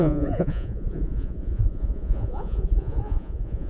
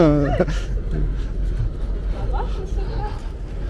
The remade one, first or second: first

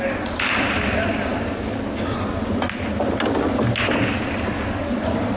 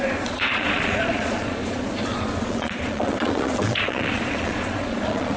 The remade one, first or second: second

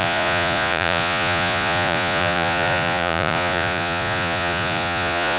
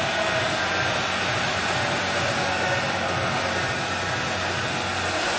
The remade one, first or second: first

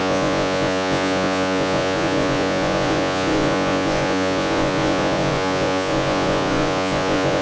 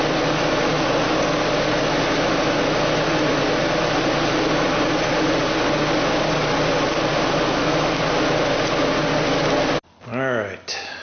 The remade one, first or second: first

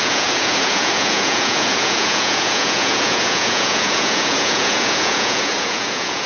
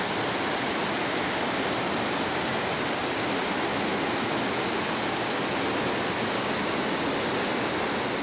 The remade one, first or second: first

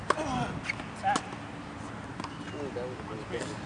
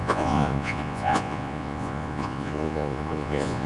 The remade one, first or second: second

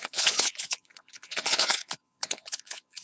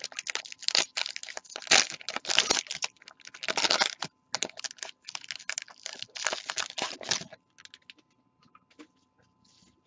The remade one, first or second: first